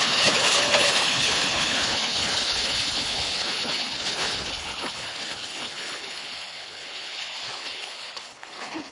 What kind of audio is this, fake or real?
fake